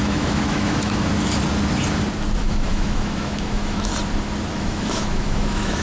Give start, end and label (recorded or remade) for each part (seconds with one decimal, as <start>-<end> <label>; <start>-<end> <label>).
0.0-1.1 remade; 1.1-2.4 recorded; 2.4-3.9 remade; 3.9-4.5 recorded; 4.5-5.8 remade